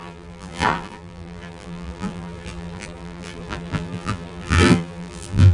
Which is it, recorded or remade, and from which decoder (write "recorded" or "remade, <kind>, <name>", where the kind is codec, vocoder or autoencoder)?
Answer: remade, vocoder, BigVGAN v2